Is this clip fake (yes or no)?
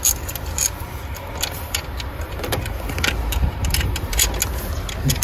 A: no